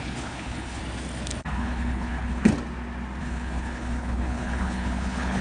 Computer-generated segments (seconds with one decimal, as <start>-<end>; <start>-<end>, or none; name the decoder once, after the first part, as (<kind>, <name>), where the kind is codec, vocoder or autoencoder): 0.0-0.8 (codec, HILCodec); 1.4-2.5; 3.2-5.4